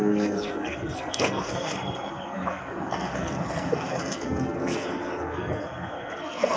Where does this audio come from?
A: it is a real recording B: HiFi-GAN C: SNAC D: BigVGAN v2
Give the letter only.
C